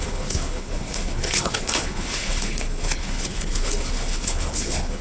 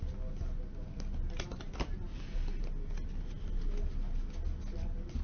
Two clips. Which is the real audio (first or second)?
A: second